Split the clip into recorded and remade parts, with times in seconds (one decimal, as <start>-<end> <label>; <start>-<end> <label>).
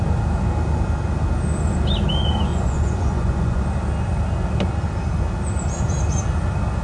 0.0-2.5 recorded; 2.5-3.6 remade; 3.6-6.8 recorded